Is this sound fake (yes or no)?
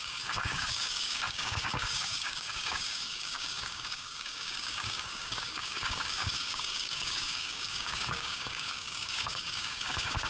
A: yes